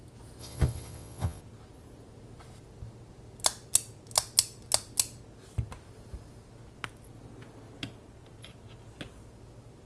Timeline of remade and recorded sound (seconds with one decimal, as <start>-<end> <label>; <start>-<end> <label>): 0.0-0.4 recorded; 0.4-1.4 remade; 1.4-9.9 recorded